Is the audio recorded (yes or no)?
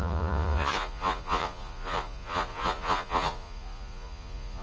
no